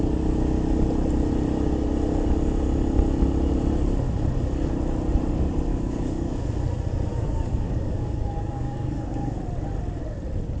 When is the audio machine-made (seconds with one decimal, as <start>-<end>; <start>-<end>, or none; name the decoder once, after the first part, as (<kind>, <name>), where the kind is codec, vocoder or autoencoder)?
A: 5.7-6.5 (codec, DAC); 7.1-9.4